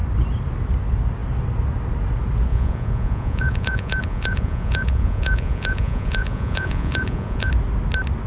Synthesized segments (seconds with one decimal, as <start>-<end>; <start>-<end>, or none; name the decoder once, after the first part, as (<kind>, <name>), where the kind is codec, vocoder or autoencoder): 2.5-7.5 (vocoder, Vocos)